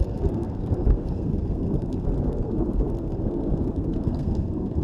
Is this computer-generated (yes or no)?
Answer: yes